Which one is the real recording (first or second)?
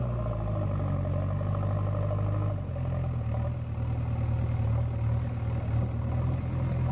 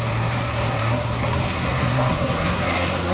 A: first